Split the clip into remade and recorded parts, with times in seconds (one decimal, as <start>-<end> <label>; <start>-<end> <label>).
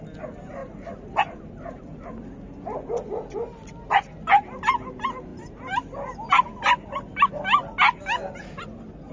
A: 0.0-9.1 recorded